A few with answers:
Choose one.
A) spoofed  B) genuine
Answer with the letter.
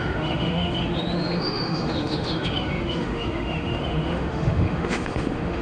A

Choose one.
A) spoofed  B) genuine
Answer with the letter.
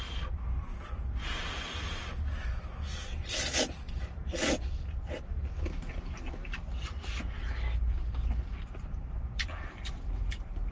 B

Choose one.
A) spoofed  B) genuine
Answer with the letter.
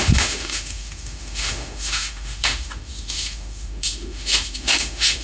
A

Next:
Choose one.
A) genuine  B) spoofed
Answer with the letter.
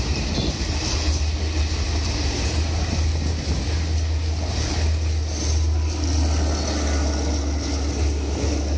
A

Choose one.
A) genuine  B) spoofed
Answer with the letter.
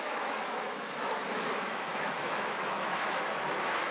B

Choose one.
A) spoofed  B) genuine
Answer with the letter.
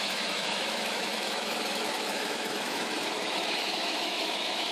A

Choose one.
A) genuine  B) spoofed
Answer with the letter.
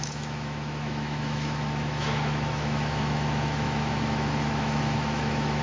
B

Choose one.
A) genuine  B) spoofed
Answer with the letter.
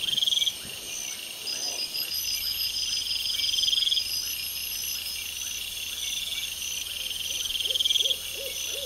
A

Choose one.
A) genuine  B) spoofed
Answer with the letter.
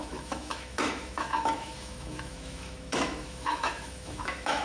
B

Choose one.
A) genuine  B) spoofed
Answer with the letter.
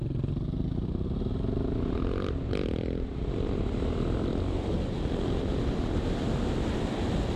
A